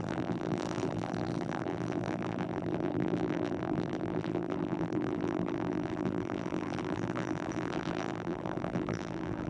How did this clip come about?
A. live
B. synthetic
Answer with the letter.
B